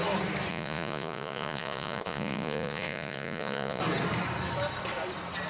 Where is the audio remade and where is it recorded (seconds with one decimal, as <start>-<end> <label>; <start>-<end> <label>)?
0.0-0.5 recorded; 0.5-3.8 remade; 3.8-5.5 recorded